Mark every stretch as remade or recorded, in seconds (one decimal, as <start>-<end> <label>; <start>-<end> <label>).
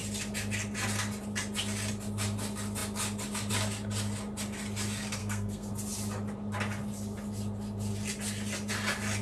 0.0-5.2 recorded; 5.2-5.7 remade; 5.7-9.2 recorded